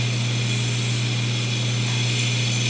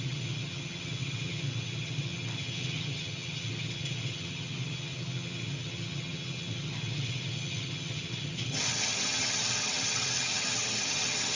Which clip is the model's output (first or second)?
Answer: second